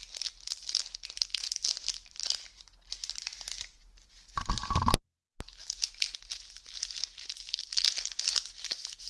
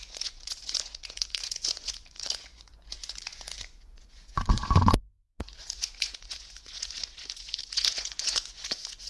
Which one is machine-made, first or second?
second